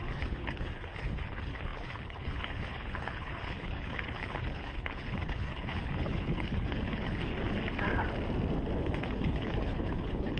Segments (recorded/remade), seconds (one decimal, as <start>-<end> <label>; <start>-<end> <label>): 0.0-7.3 remade; 7.3-8.8 recorded; 8.8-10.4 remade